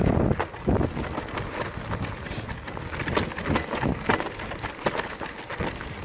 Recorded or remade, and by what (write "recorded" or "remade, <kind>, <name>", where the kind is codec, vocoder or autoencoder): recorded